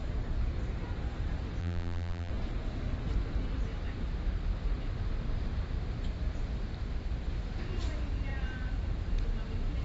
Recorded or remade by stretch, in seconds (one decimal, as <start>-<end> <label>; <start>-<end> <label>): 0.0-1.6 recorded; 1.6-2.3 remade; 2.3-9.8 recorded

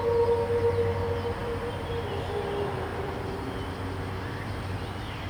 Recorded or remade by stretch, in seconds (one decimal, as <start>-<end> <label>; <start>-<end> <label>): 0.0-1.4 recorded; 1.4-2.3 remade; 2.3-2.9 recorded; 2.9-5.3 remade